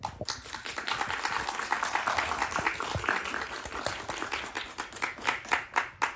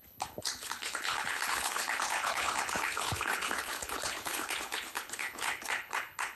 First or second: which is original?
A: first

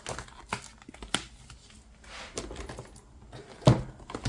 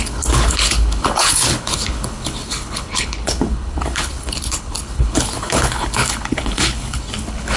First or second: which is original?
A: first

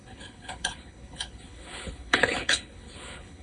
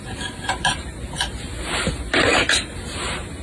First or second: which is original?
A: second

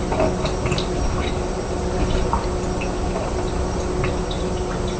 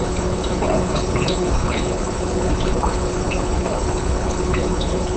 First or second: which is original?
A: first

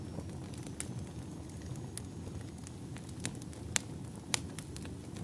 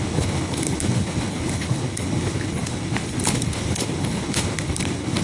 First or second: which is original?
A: first